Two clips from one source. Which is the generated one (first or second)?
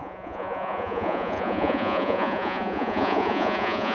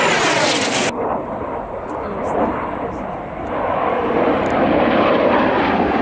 first